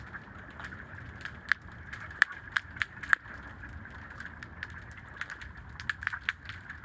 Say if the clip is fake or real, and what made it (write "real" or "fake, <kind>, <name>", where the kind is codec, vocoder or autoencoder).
real